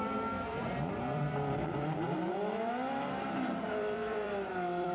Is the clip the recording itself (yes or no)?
no